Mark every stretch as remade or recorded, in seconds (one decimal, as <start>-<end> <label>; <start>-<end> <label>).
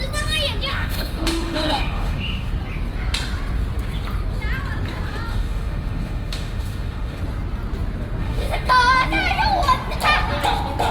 0.0-0.7 recorded; 0.7-2.5 remade; 2.5-5.3 recorded; 5.3-7.2 remade; 7.2-8.2 recorded; 8.2-8.7 remade; 8.7-10.9 recorded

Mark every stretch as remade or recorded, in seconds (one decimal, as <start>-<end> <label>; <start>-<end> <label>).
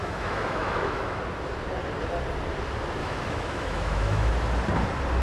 0.0-1.2 remade; 1.2-3.0 recorded; 3.0-4.3 remade; 4.3-5.2 recorded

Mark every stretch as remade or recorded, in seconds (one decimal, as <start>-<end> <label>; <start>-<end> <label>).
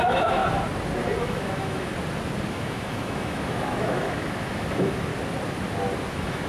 0.0-0.4 remade; 0.4-1.2 recorded; 1.2-1.9 remade; 1.9-2.5 recorded; 2.5-5.1 remade; 5.1-6.1 recorded; 6.1-6.5 remade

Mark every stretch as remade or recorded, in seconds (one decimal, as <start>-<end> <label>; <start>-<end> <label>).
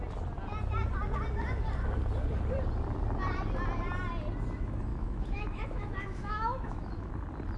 0.0-4.9 recorded; 4.9-7.1 remade; 7.1-7.6 recorded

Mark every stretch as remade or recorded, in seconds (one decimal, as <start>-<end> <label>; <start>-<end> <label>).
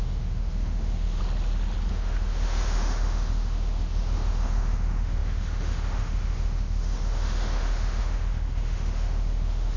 0.0-1.2 remade; 1.2-1.9 recorded; 1.9-9.8 remade